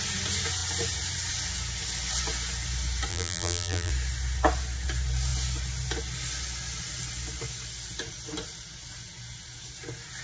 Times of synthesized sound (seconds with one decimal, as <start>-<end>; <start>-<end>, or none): 3.1-3.9